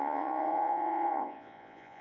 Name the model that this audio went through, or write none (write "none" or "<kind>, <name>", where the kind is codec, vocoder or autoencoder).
vocoder, Vocos